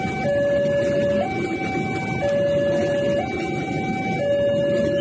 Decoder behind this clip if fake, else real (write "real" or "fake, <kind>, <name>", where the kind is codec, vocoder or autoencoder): real